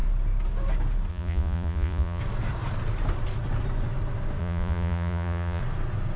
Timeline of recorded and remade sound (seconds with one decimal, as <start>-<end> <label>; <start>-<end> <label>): 0.0-1.1 recorded; 1.1-2.2 remade; 2.2-4.4 recorded; 4.4-5.6 remade; 5.6-6.2 recorded